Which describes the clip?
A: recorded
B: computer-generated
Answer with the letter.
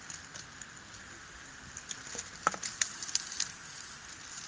A